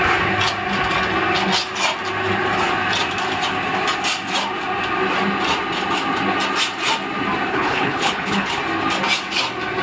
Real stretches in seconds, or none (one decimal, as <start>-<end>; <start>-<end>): 0.0-7.5; 8.6-9.8